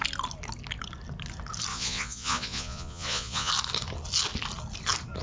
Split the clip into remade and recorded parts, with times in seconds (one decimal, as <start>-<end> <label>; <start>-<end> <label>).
0.0-1.7 recorded; 1.7-3.5 remade; 3.5-5.2 recorded

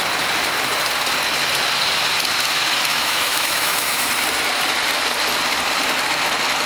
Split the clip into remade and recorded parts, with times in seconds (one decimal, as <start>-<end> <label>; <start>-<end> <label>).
0.0-2.9 recorded; 2.9-4.1 remade; 4.1-6.7 recorded

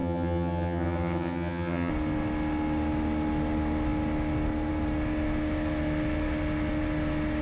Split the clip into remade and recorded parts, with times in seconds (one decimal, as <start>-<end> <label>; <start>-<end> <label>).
0.0-1.9 remade; 1.9-7.4 recorded

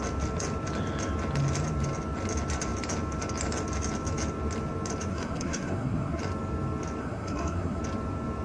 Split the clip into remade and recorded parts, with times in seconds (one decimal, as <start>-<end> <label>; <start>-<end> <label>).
0.0-5.1 recorded; 5.1-6.2 remade; 6.2-7.0 recorded; 7.0-7.8 remade; 7.8-8.4 recorded

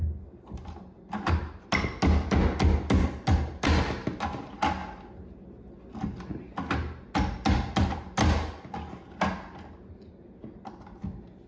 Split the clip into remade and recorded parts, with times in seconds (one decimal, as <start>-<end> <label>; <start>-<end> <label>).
0.0-11.5 recorded

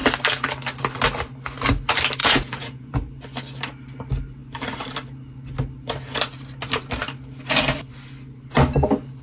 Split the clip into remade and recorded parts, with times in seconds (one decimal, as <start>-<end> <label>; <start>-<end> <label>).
0.0-2.2 recorded; 2.2-2.9 remade; 2.9-9.2 recorded